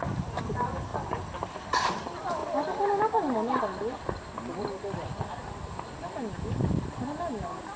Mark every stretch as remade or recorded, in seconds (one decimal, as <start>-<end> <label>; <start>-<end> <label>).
0.0-0.9 recorded; 0.9-1.7 remade; 1.7-2.4 recorded; 2.4-3.6 remade; 3.6-7.8 recorded